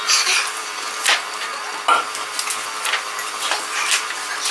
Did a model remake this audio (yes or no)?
no